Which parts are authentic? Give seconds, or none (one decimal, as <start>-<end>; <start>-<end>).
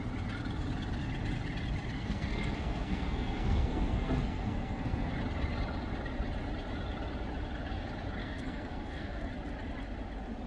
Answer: 0.0-1.9; 5.1-8.2; 9.3-10.5